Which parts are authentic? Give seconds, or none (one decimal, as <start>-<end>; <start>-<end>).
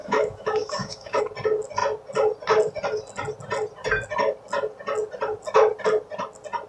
1.2-6.7